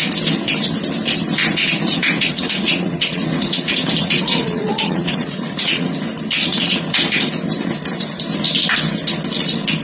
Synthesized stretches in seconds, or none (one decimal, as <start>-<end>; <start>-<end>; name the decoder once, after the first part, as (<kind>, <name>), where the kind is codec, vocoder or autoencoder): 2.0-5.9 (vocoder, Vocos); 6.5-7.3